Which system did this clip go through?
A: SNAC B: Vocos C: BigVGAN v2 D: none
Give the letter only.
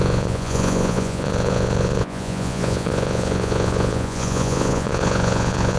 B